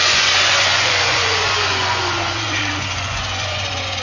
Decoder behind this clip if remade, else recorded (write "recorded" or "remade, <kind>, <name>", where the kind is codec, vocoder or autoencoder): remade, vocoder, Vocos